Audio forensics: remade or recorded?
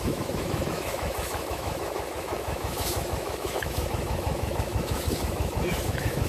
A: remade